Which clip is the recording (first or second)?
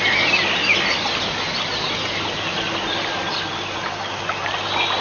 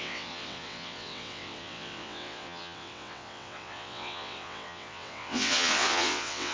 first